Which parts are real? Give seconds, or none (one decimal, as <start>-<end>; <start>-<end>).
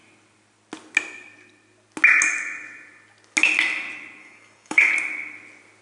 0.0-4.2; 4.9-5.8